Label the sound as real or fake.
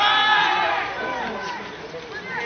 real